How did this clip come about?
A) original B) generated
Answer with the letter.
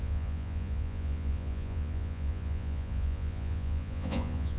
B